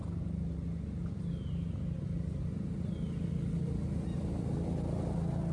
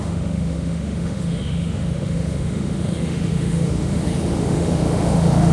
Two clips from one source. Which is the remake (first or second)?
second